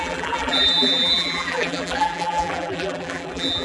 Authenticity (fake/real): fake